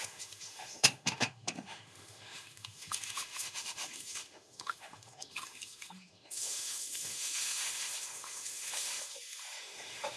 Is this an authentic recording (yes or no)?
no